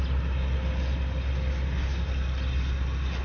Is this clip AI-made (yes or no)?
no